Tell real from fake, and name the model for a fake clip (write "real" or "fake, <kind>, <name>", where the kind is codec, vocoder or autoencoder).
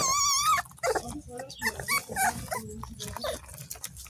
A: real